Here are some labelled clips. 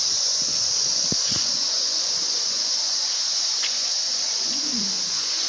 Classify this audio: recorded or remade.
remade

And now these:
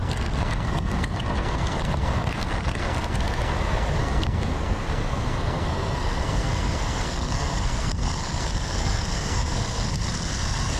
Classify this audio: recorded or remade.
remade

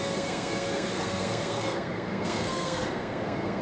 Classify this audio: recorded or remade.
remade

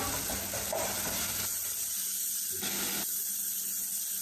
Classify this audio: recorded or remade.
recorded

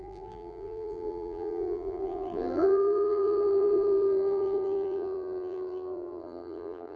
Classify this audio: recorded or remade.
remade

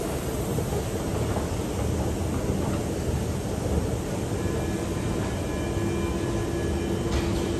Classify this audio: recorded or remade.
recorded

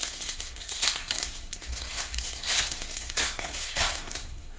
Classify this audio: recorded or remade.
remade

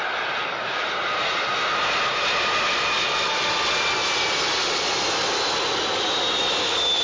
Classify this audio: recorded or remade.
recorded